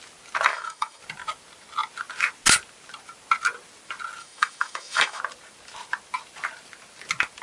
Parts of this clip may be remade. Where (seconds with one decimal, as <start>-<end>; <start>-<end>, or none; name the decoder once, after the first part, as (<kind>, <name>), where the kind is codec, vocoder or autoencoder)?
0.5-1.0 (autoencoder, DAC-VAE); 4.2-5.2